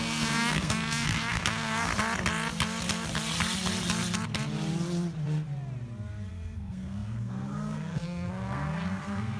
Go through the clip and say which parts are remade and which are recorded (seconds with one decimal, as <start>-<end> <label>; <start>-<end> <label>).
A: 0.0-1.9 remade; 1.9-6.3 recorded; 6.3-9.4 remade